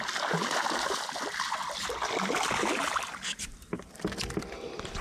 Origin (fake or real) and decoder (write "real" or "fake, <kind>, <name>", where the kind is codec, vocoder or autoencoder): real